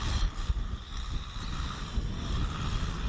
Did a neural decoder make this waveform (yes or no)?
no